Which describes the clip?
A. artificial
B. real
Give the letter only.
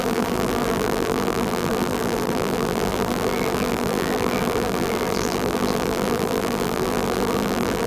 A